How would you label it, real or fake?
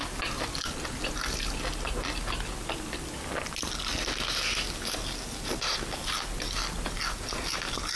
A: real